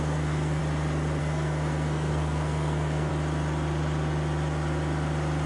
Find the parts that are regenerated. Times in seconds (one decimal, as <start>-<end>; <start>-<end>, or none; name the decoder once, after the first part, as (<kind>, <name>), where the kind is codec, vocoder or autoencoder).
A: 0.0-0.6 (codec, SNAC); 1.2-3.1